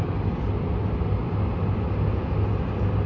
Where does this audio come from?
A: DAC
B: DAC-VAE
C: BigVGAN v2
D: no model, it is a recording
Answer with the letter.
D